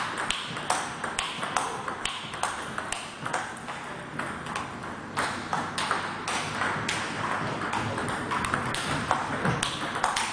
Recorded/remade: recorded